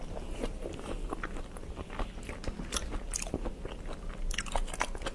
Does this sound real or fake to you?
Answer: real